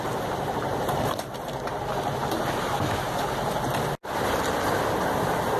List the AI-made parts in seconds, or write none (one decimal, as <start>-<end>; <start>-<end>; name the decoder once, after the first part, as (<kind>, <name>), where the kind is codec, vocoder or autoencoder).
none